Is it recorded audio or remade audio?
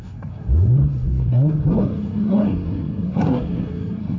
remade